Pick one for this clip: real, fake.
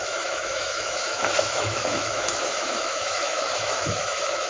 fake